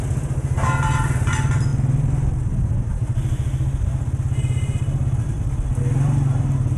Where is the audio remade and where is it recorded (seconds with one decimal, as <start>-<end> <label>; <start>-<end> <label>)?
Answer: 0.0-6.8 recorded

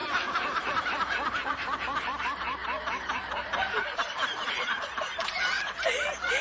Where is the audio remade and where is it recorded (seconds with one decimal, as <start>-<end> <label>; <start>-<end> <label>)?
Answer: 0.0-2.2 remade; 2.2-3.2 recorded; 3.2-5.9 remade; 5.9-6.4 recorded

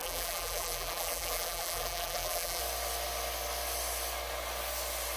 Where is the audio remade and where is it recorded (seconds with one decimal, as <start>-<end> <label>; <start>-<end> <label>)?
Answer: 0.0-2.6 remade; 2.6-5.2 recorded

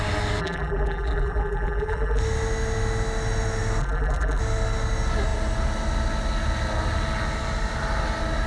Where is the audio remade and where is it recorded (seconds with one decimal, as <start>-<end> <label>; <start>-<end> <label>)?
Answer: 0.0-0.4 recorded; 0.4-2.2 remade; 2.2-3.8 recorded; 3.8-4.4 remade; 4.4-8.5 recorded

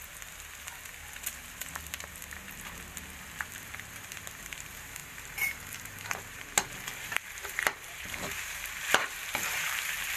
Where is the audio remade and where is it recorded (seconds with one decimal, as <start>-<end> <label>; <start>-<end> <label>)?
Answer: 0.0-4.4 recorded; 4.4-10.2 remade

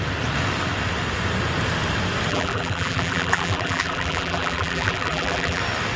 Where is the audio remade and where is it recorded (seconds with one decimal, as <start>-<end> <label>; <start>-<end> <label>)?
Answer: 0.0-2.3 recorded; 2.3-5.6 remade; 5.6-6.0 recorded